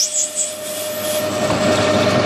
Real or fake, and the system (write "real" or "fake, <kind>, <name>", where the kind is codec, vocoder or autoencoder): real